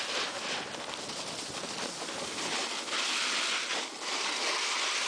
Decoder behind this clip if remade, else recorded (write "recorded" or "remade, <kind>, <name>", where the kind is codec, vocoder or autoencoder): recorded